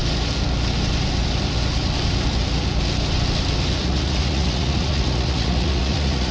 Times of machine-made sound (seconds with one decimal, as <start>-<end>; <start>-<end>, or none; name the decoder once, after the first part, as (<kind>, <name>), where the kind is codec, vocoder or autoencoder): 3.8-6.3 (vocoder, Vocos)